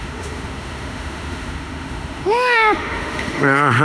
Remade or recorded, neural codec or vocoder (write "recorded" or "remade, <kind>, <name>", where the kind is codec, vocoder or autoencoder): remade, autoencoder, DAC-VAE